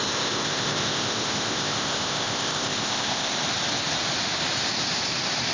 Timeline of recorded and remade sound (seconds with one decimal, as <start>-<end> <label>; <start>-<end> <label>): 0.0-3.3 remade; 3.3-5.5 recorded